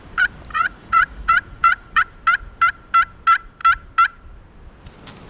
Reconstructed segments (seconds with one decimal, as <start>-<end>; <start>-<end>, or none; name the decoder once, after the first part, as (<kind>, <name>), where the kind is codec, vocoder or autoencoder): 0.5-2.0 (vocoder, Vocos)